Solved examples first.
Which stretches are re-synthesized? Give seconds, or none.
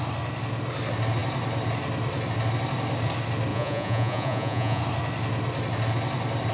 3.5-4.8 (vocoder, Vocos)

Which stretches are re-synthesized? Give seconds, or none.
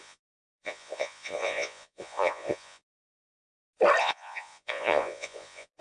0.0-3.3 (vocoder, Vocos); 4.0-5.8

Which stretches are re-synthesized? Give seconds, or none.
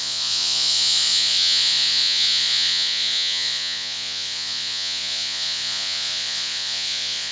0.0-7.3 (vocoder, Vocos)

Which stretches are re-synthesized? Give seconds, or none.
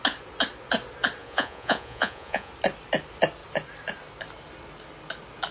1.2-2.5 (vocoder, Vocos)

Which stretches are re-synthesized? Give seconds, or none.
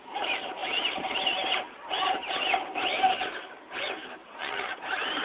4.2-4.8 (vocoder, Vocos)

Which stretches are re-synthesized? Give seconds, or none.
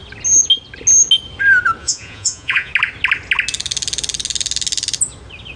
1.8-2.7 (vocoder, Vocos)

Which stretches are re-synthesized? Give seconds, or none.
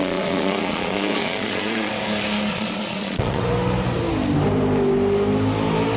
0.0-1.9 (vocoder, Vocos); 2.5-3.4